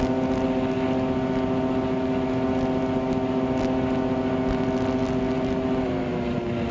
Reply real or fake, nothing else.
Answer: real